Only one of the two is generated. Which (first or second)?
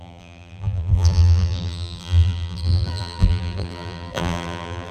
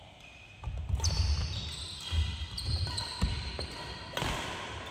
first